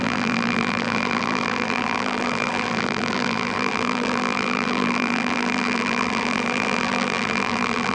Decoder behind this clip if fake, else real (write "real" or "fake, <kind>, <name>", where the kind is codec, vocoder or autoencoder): fake, vocoder, BigVGAN v2